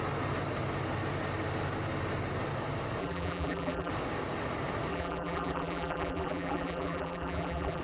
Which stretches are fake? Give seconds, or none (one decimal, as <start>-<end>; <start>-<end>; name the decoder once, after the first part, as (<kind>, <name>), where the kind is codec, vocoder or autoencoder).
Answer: 3.0-3.9 (vocoder, BigVGAN v2); 4.9-7.8